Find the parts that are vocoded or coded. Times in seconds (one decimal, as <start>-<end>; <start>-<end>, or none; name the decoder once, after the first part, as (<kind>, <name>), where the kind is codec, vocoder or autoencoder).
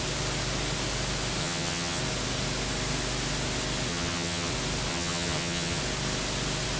1.4-2.0 (vocoder, HiFi-GAN); 3.9-4.5; 4.9-5.8